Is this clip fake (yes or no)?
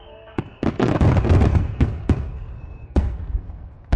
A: yes